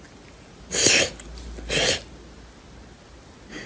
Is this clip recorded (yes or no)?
yes